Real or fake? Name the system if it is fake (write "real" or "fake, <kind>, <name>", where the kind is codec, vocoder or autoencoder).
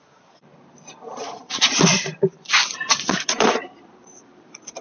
fake, vocoder, BigVGAN v2